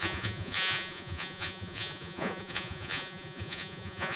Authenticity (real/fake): fake